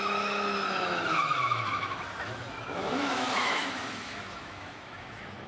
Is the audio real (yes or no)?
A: no